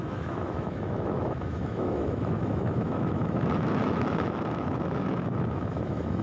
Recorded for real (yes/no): no